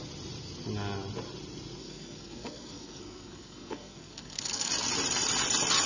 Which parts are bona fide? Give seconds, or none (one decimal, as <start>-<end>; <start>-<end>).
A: 0.0-1.8; 4.7-5.9